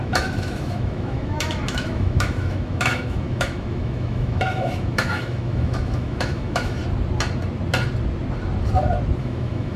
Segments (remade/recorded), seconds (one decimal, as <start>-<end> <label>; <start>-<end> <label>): 0.0-6.8 remade; 6.8-9.2 recorded; 9.2-9.8 remade